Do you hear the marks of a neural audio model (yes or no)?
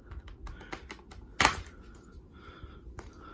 no